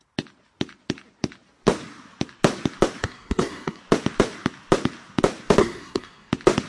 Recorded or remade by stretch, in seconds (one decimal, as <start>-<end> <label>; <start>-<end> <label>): 0.0-3.0 recorded; 3.0-3.8 remade; 3.8-5.6 recorded; 5.6-6.3 remade; 6.3-6.7 recorded